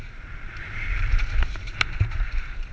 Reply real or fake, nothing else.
fake